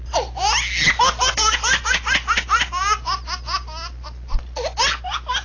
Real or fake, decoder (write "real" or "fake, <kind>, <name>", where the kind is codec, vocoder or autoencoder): real